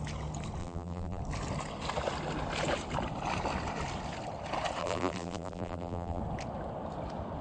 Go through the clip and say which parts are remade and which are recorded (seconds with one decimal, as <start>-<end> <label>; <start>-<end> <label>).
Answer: 0.0-0.6 recorded; 0.6-1.2 remade; 1.2-4.8 recorded; 4.8-6.2 remade; 6.2-7.4 recorded